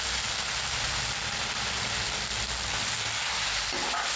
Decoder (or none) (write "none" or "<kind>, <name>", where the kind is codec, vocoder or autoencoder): none